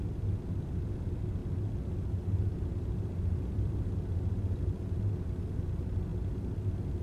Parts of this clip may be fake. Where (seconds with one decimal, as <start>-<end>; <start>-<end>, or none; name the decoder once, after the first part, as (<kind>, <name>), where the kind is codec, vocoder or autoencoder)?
none